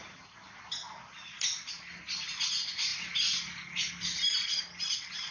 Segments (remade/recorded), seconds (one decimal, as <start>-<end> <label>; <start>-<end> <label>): 0.0-5.3 recorded